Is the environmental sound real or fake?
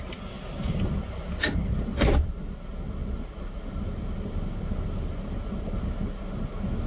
real